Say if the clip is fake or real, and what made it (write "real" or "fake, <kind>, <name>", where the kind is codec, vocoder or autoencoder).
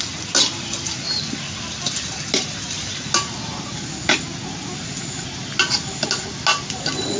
real